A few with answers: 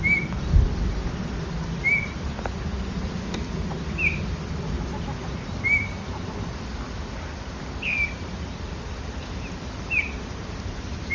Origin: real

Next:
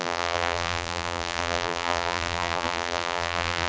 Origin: fake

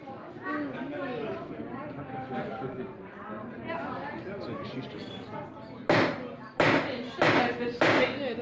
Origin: real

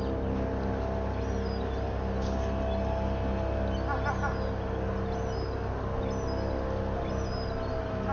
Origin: real